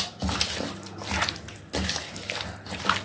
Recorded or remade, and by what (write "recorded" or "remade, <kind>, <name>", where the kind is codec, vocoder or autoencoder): recorded